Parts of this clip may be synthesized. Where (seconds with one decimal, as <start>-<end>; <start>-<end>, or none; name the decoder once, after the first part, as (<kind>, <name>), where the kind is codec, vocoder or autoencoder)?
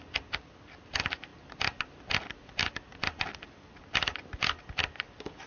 none